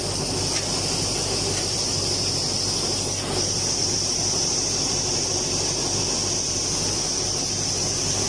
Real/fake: real